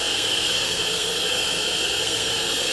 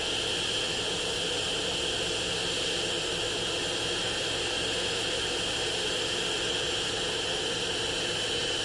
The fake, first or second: first